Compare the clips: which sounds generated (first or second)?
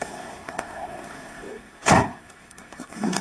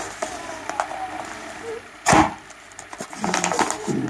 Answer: first